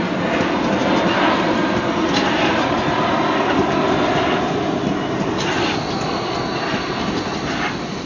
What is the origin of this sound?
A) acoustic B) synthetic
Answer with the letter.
A